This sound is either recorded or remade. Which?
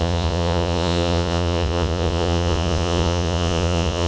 remade